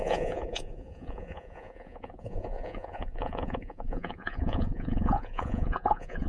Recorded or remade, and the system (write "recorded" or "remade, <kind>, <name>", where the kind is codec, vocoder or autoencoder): remade, vocoder, Vocos